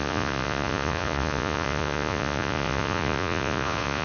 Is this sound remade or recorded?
remade